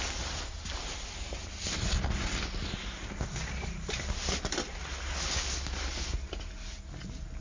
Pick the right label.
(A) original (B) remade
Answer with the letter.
A